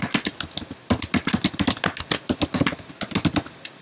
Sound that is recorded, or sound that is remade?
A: remade